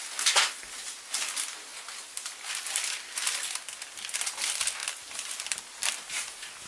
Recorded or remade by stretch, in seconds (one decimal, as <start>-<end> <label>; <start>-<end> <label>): 0.0-6.7 recorded